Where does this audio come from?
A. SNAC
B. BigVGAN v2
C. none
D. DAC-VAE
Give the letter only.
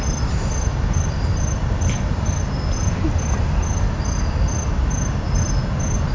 C